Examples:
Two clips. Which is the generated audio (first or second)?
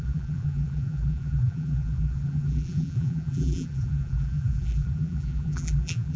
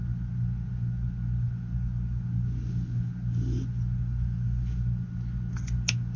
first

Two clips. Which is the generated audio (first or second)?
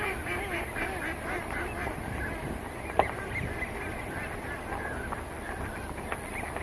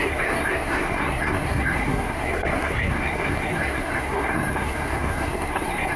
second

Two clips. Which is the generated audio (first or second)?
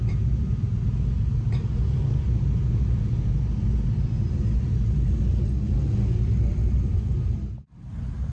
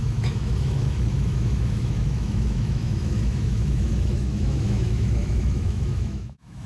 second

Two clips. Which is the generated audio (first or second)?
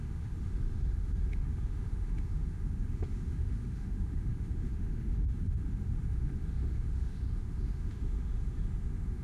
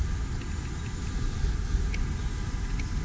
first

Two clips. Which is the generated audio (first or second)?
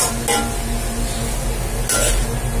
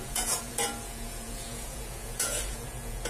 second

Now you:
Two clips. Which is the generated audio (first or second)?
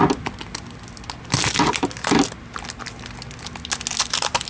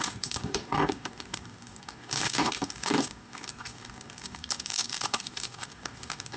second